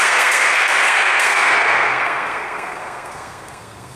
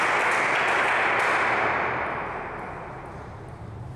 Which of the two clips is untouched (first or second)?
second